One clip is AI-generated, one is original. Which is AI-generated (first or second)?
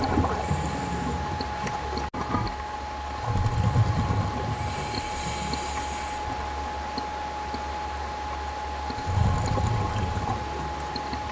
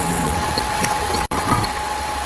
second